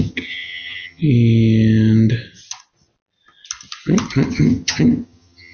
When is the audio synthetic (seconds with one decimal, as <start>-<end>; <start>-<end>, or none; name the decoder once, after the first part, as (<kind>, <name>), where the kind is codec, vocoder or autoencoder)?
0.0-1.0 (vocoder, HiFi-GAN); 4.3-5.5